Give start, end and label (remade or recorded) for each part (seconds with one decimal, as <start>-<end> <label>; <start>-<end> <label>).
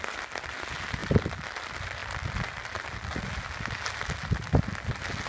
0.0-5.3 recorded